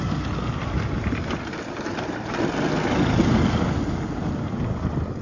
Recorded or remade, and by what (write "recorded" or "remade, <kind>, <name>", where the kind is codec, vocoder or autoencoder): recorded